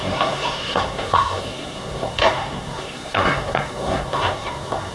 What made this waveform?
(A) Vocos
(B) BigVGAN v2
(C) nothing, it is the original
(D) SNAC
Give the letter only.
D